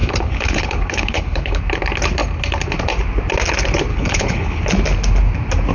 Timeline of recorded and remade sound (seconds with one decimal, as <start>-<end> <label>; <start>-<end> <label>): 0.0-1.6 remade; 1.6-3.9 recorded; 3.9-4.6 remade; 4.6-5.7 recorded